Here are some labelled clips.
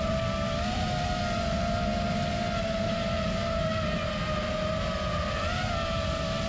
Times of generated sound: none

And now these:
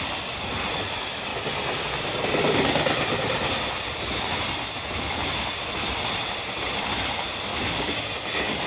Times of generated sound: 0.0-1.3 (vocoder, BigVGAN v2); 5.6-7.5

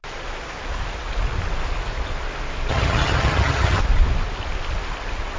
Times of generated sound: 2.7-3.8 (vocoder, HiFi-GAN)

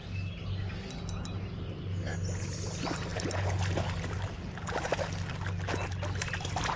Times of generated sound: none

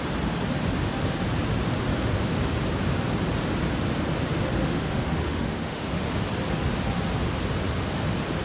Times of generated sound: 4.6-6.1 (autoencoder, DAC-VAE)

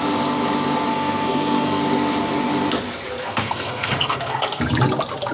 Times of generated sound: 0.9-1.8 (codec, SNAC); 3.2-4.6

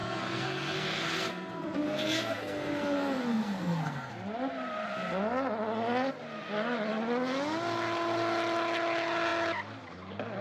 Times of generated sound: 0.0-4.1 (codec, SNAC)

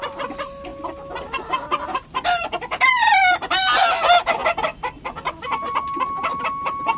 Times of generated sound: none